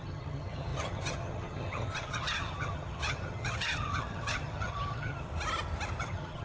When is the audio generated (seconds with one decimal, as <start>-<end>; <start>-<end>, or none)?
0.0-5.3; 6.0-6.4

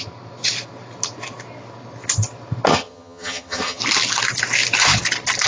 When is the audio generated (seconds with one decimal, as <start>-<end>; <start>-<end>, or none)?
2.7-3.8

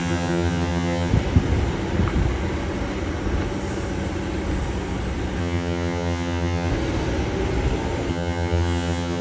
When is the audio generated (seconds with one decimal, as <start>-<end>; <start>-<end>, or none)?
0.0-1.1; 5.4-6.7; 8.1-9.2